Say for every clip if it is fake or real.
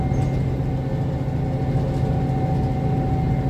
real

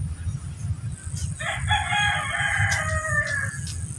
real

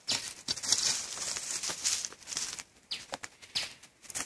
real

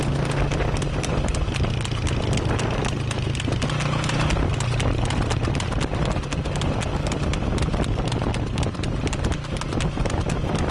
real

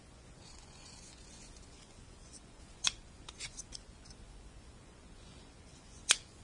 fake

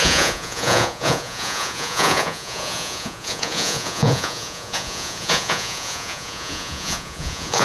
fake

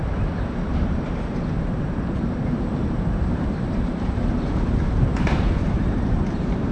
fake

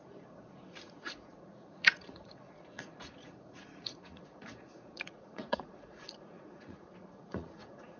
fake